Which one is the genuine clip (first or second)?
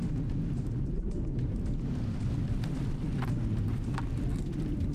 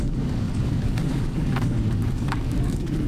first